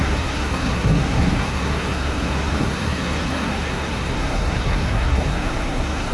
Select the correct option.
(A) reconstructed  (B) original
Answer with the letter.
A